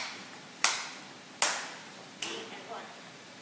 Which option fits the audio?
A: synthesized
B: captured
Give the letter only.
B